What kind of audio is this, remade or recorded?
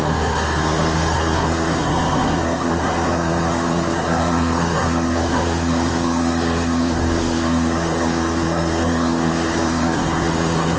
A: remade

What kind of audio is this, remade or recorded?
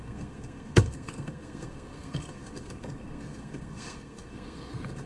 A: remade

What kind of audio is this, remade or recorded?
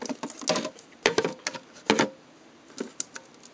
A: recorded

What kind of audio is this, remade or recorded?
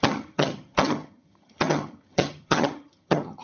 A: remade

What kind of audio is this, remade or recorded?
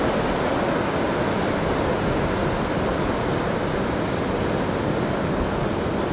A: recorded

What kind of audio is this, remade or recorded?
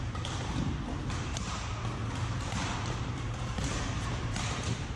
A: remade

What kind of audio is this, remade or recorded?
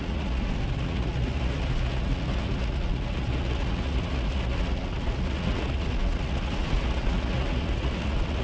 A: remade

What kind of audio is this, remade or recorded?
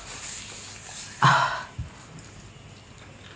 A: recorded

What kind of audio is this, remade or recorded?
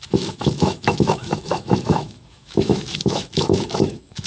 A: remade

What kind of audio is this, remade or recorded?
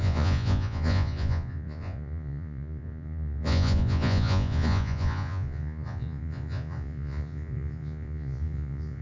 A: remade